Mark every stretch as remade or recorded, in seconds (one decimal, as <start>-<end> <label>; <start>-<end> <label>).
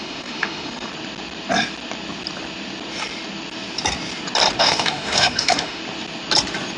0.0-0.9 remade; 0.9-4.6 recorded; 4.6-5.8 remade; 5.8-6.8 recorded